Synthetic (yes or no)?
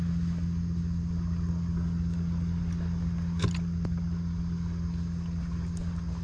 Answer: no